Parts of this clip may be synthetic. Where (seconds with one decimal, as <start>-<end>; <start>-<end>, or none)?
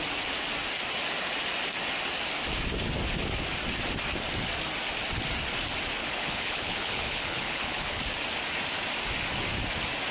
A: 6.0-8.0